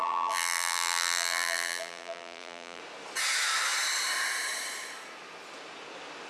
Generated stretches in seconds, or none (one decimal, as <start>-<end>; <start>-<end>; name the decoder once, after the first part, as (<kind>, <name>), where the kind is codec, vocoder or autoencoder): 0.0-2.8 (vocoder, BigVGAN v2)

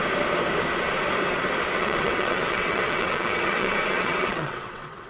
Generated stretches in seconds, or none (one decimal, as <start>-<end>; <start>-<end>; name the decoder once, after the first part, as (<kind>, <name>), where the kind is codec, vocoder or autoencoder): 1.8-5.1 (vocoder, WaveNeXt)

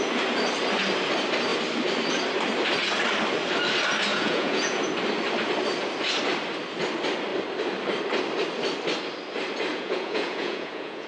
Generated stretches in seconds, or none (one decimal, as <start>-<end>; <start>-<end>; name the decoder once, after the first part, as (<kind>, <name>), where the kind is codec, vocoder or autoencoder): 4.1-4.8 (vocoder, Vocos); 9.7-11.1

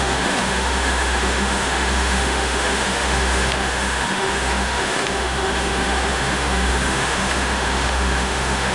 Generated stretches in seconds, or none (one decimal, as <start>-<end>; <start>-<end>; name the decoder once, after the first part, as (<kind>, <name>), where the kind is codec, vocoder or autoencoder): 0.0-8.7 (autoencoder, DAC-VAE)

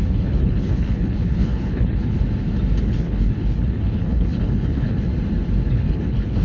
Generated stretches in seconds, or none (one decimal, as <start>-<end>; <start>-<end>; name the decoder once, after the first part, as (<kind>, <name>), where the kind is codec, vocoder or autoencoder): 0.0-2.2 (codec, HILCodec); 2.8-5.1; 5.7-6.4

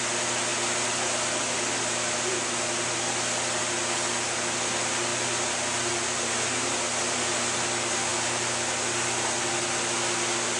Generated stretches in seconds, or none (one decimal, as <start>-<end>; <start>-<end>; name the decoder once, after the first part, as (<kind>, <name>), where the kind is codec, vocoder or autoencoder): none

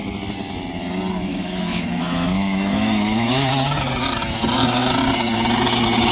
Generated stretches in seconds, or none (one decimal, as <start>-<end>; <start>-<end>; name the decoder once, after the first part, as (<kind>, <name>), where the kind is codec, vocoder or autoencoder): 1.3-3.5 (autoencoder, DAC-VAE)

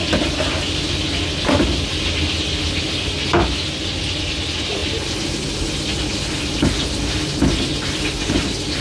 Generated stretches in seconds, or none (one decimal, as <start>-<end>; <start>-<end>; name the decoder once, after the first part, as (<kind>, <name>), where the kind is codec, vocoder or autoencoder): none